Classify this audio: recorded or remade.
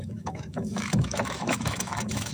remade